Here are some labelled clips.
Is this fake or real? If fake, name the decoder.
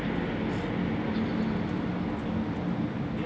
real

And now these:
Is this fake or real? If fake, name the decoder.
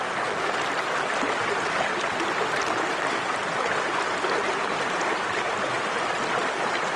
real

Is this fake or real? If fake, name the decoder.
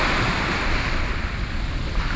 real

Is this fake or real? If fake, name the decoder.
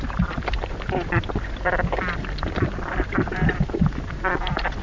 fake, vocoder, BigVGAN v2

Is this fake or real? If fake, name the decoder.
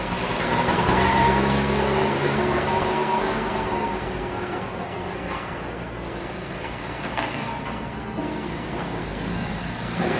fake, codec, SNAC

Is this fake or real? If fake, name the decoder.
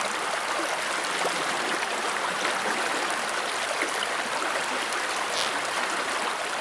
real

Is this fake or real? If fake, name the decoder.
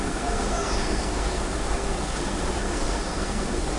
fake, codec, SNAC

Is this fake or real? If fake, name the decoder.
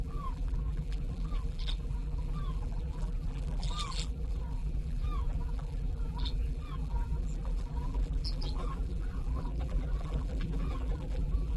fake, vocoder, BigVGAN v2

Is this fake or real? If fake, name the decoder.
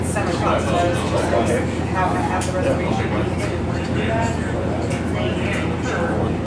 real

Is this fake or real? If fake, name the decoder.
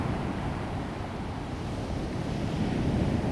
real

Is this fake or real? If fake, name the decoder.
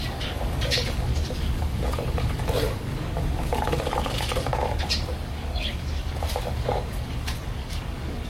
fake, codec, DAC